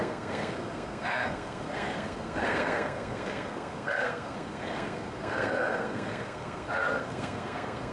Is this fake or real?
fake